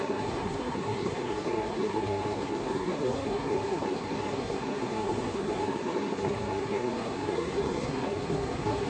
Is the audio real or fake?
fake